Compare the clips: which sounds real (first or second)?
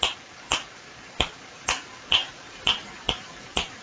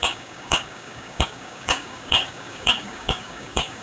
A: first